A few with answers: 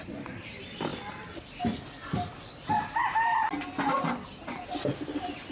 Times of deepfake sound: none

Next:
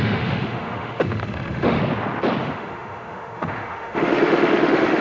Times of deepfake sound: 0.0-1.8; 2.4-5.0

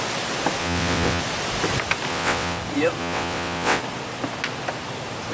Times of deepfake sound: 0.6-1.2; 2.1-2.6; 3.0-3.8

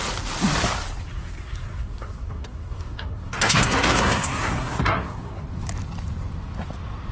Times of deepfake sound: 1.1-5.4

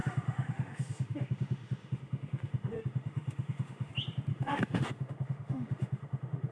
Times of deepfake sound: 0.0-3.9; 4.3-6.5

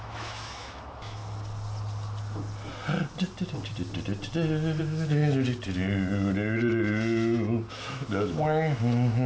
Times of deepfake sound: 0.0-1.2; 4.8-5.2; 7.7-9.3

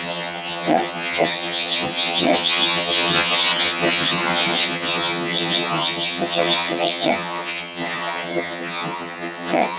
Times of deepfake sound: 0.0-9.8